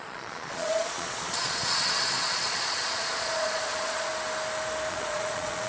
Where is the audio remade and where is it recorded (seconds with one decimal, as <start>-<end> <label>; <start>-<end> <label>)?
0.0-4.1 remade; 4.1-4.9 recorded; 4.9-5.7 remade

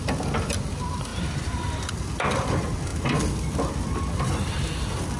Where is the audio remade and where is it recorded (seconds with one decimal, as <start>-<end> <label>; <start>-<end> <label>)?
0.0-1.1 recorded; 1.1-1.9 remade; 1.9-5.2 recorded

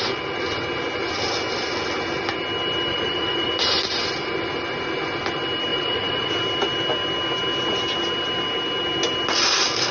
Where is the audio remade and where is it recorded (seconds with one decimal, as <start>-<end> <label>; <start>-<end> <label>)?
0.0-2.9 recorded; 2.9-3.5 remade; 3.5-5.7 recorded; 5.7-6.3 remade; 6.3-9.9 recorded

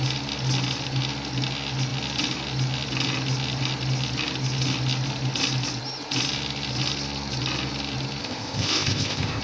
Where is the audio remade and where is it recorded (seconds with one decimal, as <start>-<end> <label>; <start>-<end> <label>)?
0.0-8.2 recorded; 8.2-9.4 remade

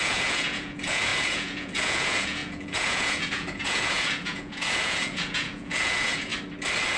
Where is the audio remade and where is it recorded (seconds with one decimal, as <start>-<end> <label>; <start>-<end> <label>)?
0.0-6.3 remade; 6.3-7.0 recorded

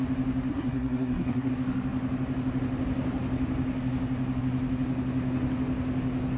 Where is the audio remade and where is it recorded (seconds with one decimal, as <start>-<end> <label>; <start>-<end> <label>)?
0.0-0.5 recorded; 0.5-1.5 remade; 1.5-6.4 recorded

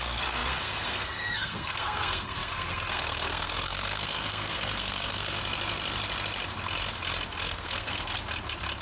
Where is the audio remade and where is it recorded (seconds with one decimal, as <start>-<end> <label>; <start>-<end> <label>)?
0.0-5.4 remade; 5.4-7.4 recorded; 7.4-8.2 remade; 8.2-8.8 recorded